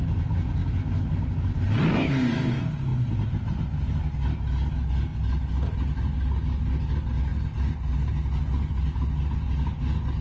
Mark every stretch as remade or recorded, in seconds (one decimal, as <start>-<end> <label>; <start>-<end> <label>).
0.0-10.2 recorded